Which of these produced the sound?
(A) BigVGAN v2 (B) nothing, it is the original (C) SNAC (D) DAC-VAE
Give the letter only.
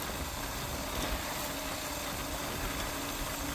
B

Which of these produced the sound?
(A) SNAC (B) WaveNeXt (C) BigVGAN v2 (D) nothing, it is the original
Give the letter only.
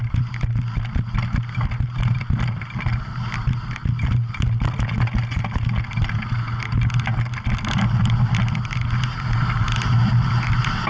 D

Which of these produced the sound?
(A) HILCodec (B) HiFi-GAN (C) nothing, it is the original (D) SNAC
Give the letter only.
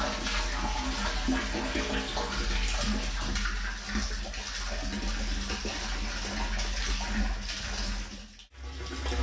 C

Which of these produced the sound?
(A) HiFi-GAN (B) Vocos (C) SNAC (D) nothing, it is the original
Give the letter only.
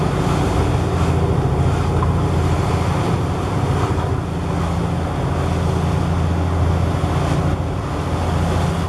D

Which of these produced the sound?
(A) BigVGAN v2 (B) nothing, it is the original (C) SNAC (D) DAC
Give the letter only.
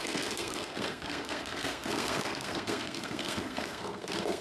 C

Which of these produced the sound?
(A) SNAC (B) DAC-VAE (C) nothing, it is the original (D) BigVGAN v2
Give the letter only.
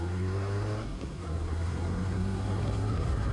A